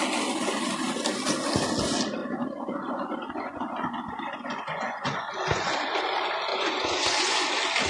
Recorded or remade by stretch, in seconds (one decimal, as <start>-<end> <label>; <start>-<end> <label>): 0.0-2.2 recorded; 2.2-6.0 remade; 6.0-6.5 recorded; 6.5-7.5 remade; 7.5-7.9 recorded